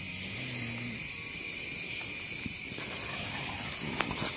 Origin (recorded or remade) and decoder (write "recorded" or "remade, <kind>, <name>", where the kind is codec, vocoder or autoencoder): recorded